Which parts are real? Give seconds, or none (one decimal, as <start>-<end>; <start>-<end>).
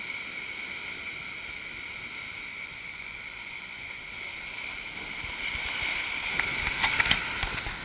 0.0-2.5; 4.0-7.8